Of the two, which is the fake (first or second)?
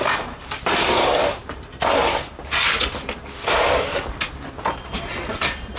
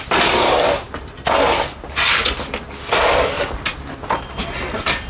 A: first